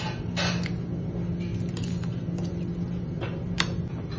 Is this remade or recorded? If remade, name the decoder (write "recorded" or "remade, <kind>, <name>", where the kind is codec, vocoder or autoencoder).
recorded